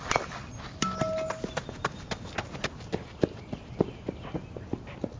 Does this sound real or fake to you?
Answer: real